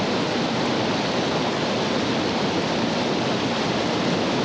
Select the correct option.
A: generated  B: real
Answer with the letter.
B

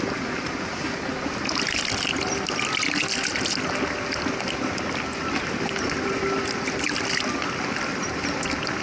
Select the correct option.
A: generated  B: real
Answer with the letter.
B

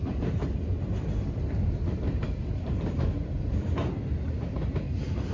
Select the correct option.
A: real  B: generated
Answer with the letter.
B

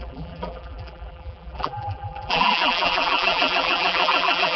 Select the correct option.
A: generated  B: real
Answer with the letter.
A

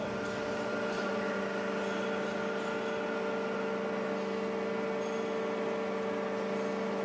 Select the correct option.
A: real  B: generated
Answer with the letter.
A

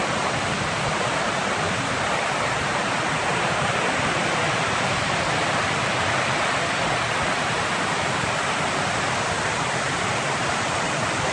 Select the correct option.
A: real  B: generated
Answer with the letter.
A